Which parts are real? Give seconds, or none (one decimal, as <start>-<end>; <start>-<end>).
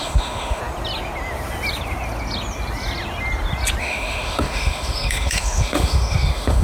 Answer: 0.6-3.8